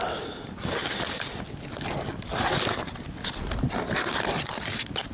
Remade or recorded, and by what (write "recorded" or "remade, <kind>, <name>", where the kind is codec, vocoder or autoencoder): recorded